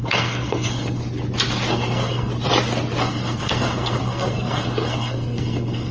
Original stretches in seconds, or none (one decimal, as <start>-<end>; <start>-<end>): 1.0-1.7; 2.3-3.0